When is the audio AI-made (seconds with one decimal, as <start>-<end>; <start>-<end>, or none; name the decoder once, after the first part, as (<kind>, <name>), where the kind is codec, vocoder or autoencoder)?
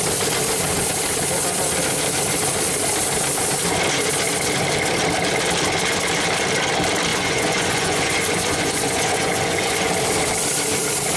7.1-9.9 (vocoder, Vocos)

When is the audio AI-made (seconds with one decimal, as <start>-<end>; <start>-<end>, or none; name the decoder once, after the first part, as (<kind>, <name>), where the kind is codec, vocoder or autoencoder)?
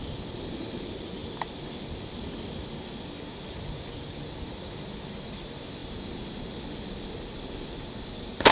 none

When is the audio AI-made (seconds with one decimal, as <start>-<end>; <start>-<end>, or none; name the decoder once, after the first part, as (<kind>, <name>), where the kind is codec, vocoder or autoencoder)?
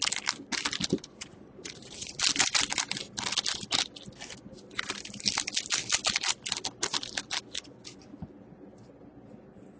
1.3-2.2 (vocoder, Vocos)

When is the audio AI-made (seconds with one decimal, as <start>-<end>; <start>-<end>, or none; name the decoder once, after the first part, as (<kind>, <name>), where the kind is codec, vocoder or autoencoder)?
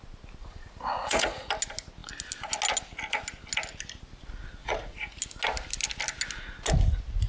0.4-1.5 (vocoder, Vocos); 4.6-5.2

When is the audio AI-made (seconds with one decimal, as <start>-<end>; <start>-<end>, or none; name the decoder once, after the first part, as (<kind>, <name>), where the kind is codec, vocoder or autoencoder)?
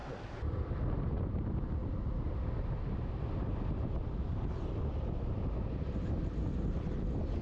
none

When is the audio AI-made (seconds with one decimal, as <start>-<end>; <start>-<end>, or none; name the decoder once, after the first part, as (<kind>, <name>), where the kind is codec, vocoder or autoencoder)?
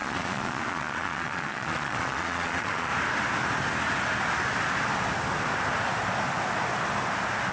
0.0-2.9 (vocoder, Vocos)